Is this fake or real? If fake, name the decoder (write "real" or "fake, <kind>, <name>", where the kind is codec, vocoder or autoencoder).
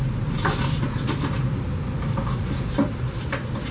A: real